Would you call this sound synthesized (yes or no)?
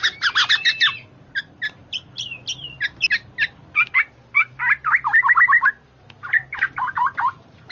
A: no